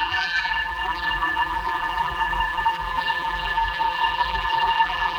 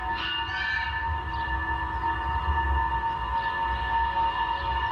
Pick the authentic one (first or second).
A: second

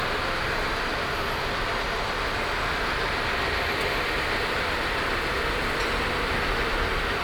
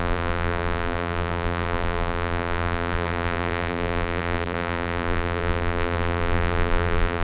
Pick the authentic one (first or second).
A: first